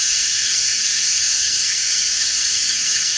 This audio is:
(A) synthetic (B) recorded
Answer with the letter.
A